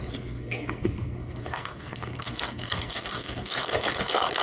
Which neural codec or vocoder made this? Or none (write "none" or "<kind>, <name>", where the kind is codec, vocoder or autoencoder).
codec, SNAC